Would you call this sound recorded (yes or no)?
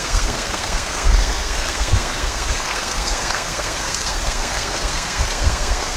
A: no